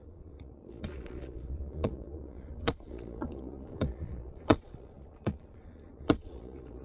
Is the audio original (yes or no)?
no